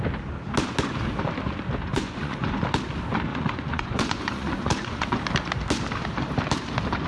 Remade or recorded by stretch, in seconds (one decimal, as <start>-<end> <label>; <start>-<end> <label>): 0.0-1.9 recorded; 1.9-2.6 remade; 2.6-3.3 recorded; 3.3-5.2 remade; 5.2-7.1 recorded